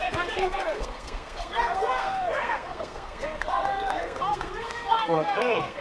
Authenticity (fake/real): fake